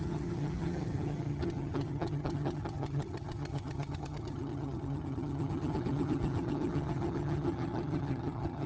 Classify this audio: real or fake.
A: fake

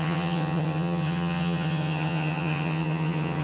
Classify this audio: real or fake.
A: fake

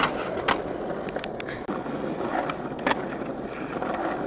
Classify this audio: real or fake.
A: real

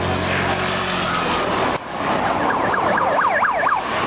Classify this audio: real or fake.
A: real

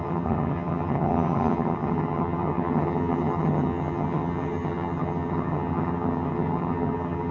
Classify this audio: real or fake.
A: fake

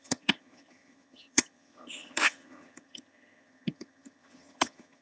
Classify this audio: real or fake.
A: fake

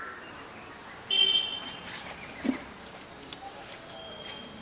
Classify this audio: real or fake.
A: real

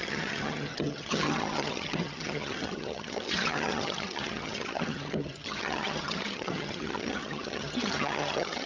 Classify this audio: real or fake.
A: fake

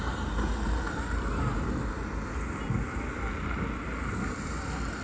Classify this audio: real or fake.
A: real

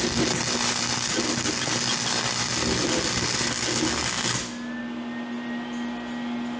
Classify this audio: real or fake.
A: real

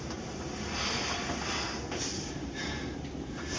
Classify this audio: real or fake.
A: real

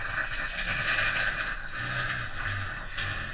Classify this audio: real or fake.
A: real